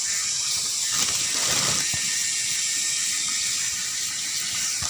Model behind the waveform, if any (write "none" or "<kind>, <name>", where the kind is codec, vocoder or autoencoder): none